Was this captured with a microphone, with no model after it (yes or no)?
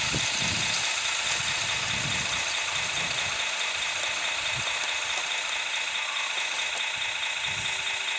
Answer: yes